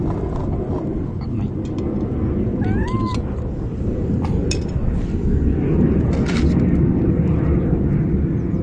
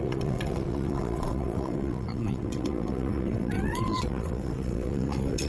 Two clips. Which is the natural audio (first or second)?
first